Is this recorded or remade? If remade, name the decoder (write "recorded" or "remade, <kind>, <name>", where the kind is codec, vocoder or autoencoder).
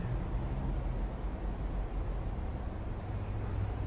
recorded